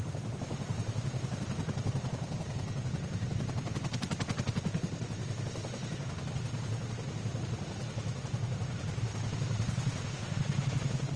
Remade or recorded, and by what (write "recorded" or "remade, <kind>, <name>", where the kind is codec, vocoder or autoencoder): remade, vocoder, BigVGAN v2